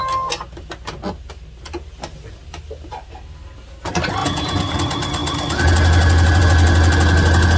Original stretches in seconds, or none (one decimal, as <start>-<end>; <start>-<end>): 0.0-4.2; 4.7-7.6